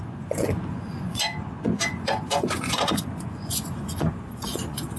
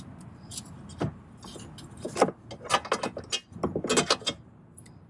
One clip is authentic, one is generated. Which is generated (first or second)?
first